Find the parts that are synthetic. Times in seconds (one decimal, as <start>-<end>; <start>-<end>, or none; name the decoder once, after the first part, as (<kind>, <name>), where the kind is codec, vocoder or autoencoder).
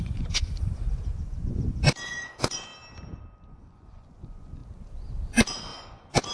0.0-2.7 (vocoder, Vocos); 3.5-4.6; 5.3-6.3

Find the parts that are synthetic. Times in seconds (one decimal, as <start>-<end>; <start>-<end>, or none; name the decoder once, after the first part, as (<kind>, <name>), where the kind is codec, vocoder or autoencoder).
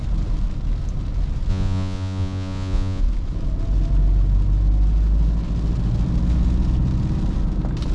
1.5-3.0 (vocoder, Vocos)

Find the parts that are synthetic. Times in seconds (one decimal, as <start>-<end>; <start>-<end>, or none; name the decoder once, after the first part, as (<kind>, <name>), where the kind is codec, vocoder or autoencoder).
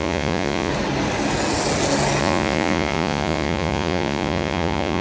0.0-0.7 (vocoder, Vocos); 2.2-5.0